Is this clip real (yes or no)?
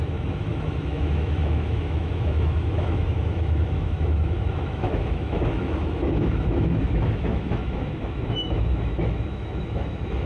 no